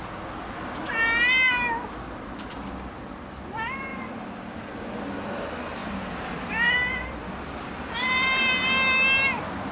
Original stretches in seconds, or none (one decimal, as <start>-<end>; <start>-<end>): 0.0-3.9; 4.7-5.8; 8.4-9.7